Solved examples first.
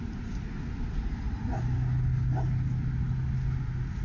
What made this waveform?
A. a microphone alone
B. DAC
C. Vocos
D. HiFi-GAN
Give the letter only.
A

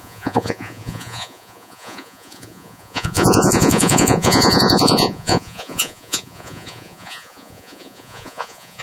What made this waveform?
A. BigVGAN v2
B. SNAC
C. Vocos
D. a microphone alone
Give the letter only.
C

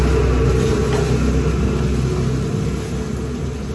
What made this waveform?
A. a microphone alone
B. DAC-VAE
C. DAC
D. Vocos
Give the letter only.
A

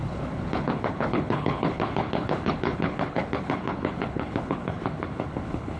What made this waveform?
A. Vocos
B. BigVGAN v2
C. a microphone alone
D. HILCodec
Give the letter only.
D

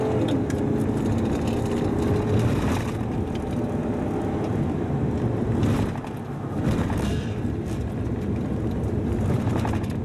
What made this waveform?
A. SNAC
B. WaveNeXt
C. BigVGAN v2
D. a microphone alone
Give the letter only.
D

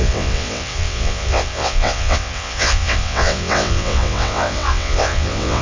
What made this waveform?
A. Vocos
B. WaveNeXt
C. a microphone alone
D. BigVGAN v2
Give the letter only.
B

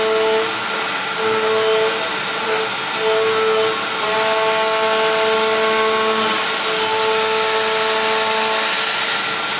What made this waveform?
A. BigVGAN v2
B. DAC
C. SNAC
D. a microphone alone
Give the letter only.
D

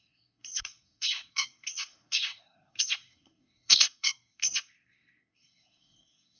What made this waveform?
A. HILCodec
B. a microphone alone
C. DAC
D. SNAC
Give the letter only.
D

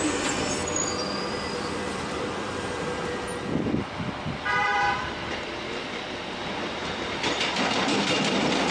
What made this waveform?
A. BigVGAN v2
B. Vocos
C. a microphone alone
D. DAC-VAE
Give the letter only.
A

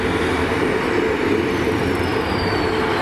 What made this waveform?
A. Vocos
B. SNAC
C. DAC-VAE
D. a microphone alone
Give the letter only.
D